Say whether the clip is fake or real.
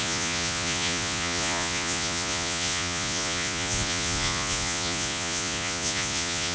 fake